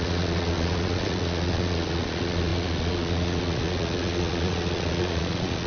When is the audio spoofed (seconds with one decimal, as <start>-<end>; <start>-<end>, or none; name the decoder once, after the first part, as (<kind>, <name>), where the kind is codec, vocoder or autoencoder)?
0.0-5.7 (vocoder, Vocos)

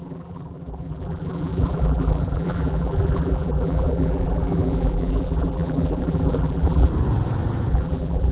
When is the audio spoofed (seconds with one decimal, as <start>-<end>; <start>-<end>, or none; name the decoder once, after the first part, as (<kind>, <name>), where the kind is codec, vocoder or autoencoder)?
0.0-6.9 (vocoder, BigVGAN v2); 7.7-8.3

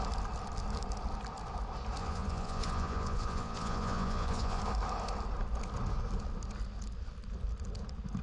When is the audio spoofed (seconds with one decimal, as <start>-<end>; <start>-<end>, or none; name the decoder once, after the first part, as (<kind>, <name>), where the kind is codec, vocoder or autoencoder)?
2.0-4.6 (vocoder, Vocos)

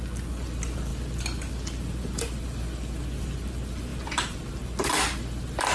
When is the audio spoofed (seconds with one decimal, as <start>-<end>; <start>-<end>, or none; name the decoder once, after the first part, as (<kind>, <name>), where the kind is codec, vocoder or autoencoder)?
none